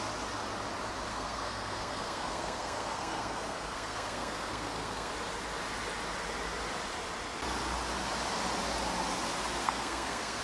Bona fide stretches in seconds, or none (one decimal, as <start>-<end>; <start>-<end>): 0.0-1.1; 5.1-9.6